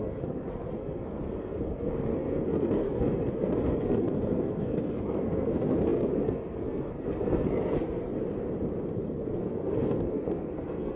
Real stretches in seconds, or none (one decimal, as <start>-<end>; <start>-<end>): 8.1-9.2